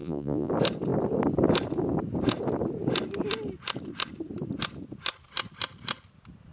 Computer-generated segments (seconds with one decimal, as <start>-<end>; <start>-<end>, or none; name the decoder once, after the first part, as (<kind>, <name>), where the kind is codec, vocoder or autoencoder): 0.0-0.5 (vocoder, Vocos)